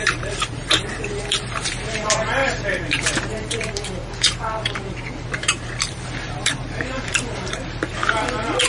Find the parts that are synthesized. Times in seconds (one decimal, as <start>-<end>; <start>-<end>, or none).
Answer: 0.0-8.0